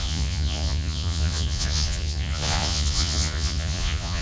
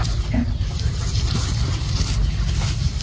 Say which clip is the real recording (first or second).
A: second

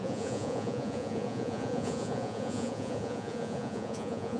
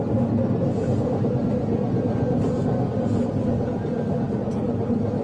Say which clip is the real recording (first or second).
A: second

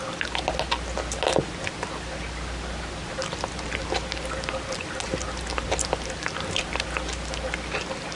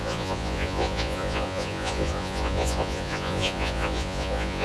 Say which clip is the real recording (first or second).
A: first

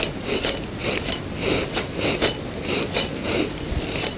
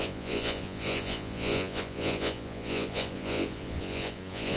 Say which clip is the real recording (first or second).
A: first